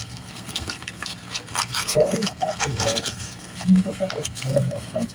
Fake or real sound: fake